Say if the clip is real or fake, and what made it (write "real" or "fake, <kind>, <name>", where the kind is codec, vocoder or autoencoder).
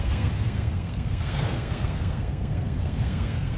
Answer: fake, codec, SNAC